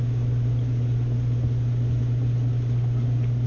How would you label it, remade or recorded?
recorded